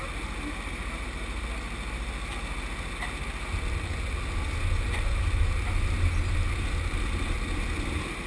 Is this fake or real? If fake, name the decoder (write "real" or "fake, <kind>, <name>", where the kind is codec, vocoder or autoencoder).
real